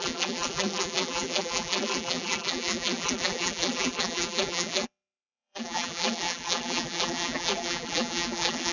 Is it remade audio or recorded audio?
remade